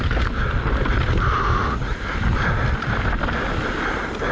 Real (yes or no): yes